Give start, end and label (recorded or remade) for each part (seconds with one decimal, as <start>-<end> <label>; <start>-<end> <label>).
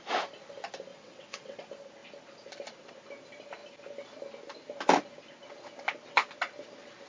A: 0.0-0.9 recorded; 0.9-1.6 remade; 1.6-7.1 recorded